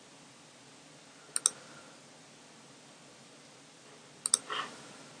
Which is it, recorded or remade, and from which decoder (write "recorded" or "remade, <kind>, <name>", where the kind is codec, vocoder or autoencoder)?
recorded